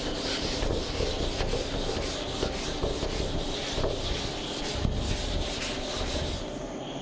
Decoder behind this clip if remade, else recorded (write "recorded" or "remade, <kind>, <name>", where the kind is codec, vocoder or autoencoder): recorded